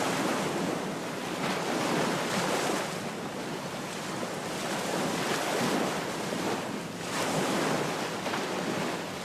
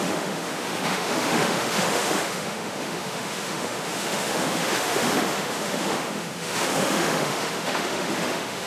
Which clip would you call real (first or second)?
first